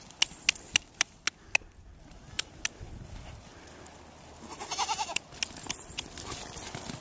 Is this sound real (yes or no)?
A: yes